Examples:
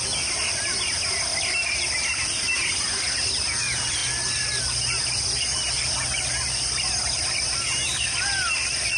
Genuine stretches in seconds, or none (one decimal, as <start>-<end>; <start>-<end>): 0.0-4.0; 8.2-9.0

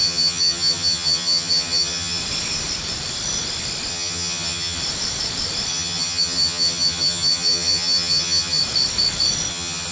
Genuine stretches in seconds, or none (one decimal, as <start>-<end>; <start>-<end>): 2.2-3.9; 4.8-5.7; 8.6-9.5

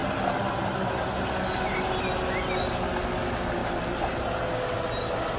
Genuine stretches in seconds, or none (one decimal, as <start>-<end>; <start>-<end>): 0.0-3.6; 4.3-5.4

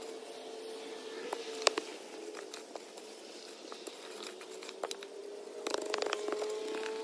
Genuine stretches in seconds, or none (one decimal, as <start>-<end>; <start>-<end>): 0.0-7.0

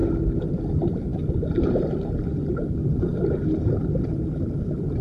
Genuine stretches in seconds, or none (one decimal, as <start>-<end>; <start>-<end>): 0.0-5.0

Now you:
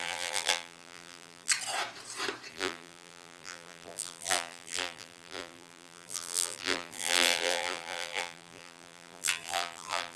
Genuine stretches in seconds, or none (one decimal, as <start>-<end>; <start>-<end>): 1.5-2.5

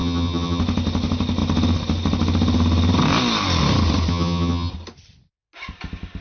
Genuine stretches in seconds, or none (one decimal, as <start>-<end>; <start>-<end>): 0.6-4.1; 4.7-6.2

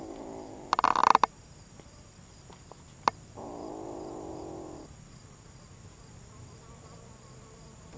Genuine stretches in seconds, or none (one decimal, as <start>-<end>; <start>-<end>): 0.0-8.0